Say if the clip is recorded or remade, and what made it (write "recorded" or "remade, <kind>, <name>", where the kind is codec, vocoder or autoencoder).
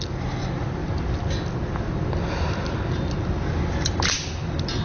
recorded